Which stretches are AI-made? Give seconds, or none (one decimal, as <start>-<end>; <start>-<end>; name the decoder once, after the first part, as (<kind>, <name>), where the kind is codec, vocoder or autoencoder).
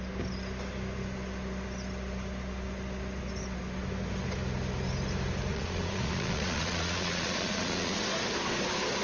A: 5.5-8.0 (vocoder, Vocos)